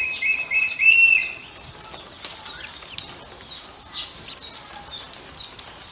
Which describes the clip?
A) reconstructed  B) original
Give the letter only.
B